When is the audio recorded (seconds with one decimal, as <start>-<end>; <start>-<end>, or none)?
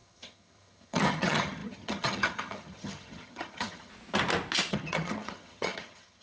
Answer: 3.9-4.7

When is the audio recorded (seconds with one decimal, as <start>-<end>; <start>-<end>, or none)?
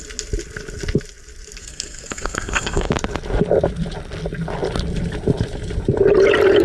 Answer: 0.0-1.6; 2.9-6.6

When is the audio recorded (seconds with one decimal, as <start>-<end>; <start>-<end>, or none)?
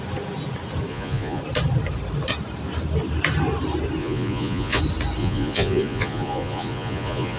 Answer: 0.0-0.9; 1.4-4.0; 4.8-5.2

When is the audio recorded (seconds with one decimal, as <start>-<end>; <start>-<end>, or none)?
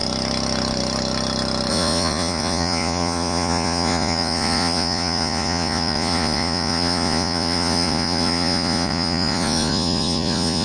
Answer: 0.0-1.7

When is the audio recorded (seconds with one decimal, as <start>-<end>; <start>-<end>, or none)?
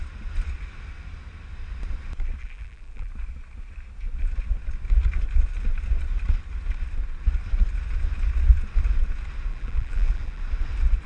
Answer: 0.0-2.4; 3.1-9.5; 10.4-11.1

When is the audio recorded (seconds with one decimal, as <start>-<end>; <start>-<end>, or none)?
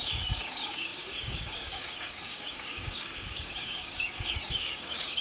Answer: none